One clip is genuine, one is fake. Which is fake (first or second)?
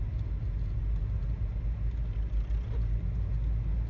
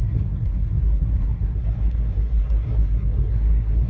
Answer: second